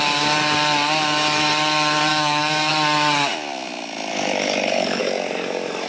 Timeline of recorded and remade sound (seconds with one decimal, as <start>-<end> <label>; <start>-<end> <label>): 0.0-2.1 recorded; 2.1-2.7 remade; 2.7-4.1 recorded; 4.1-5.0 remade; 5.0-5.9 recorded

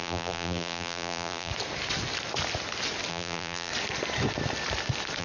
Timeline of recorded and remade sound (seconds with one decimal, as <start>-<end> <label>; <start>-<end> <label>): 0.0-1.5 remade; 1.5-3.1 recorded; 3.1-3.7 remade; 3.7-5.2 recorded

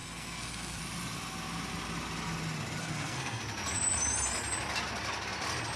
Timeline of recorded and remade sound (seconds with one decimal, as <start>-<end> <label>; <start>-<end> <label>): 0.0-0.8 remade; 0.8-2.8 recorded; 2.8-3.4 remade; 3.4-5.8 recorded

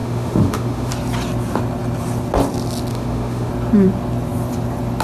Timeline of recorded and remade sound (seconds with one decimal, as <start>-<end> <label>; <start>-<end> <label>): 0.0-0.9 remade; 0.9-2.9 recorded; 2.9-3.5 remade; 3.5-5.0 recorded